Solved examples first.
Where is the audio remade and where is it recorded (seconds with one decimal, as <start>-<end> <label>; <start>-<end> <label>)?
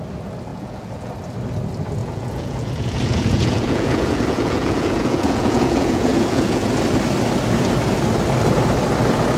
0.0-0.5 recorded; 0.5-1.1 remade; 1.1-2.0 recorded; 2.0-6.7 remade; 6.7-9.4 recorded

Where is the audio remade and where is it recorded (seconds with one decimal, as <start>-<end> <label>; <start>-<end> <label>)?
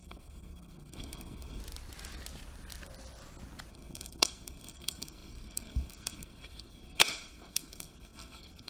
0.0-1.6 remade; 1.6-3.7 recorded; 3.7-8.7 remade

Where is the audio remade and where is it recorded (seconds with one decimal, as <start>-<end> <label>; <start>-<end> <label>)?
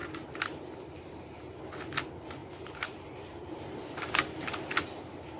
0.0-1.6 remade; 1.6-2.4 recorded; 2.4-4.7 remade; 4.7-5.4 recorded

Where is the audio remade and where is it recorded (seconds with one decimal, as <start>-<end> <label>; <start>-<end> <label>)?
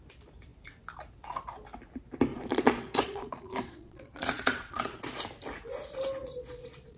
0.0-2.3 recorded; 2.3-5.0 remade; 5.0-6.2 recorded; 6.2-7.0 remade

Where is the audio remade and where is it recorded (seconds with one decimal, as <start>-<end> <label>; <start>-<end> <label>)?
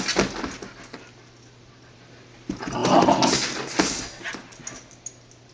0.0-5.5 recorded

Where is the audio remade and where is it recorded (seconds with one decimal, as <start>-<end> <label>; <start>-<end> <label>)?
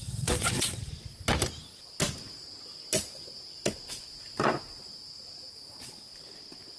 0.0-0.9 remade; 0.9-6.8 recorded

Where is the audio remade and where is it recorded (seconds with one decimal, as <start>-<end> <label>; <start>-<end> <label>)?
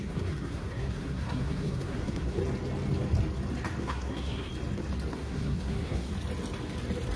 0.0-2.4 remade; 2.4-3.8 recorded; 3.8-4.5 remade; 4.5-5.1 recorded; 5.1-6.1 remade; 6.1-7.2 recorded